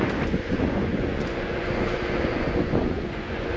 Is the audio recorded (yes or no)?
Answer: no